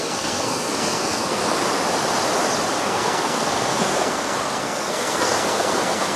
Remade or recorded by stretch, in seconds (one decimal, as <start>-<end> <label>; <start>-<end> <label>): 0.0-1.4 remade; 1.4-2.8 recorded; 2.8-6.2 remade